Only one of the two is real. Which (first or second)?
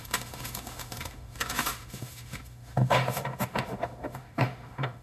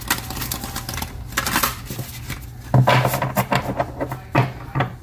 second